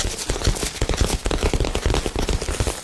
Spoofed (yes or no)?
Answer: no